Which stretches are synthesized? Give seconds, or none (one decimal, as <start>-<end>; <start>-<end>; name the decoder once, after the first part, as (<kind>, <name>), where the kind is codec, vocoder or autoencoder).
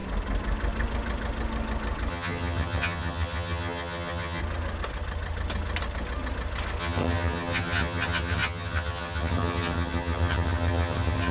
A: 2.1-4.4 (vocoder, HiFi-GAN); 6.8-11.3